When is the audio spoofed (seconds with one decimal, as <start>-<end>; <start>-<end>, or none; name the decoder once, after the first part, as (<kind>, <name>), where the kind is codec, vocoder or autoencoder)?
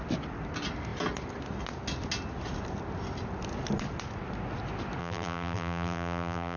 5.0-6.6 (vocoder, BigVGAN v2)